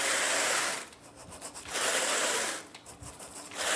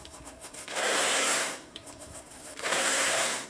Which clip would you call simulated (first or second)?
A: second